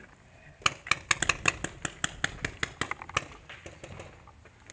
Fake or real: real